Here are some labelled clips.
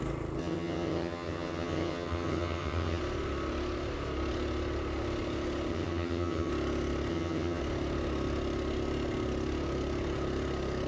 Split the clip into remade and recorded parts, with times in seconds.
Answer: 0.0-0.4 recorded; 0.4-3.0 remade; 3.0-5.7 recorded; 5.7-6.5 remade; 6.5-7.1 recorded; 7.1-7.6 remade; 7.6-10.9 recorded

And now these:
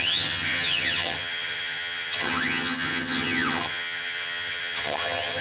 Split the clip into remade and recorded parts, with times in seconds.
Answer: 0.0-5.4 remade